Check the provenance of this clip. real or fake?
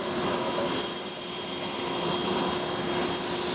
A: real